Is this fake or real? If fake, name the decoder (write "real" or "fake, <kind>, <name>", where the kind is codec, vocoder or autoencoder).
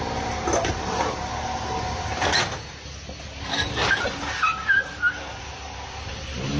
real